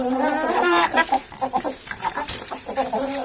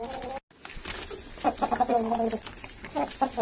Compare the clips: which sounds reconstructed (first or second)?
first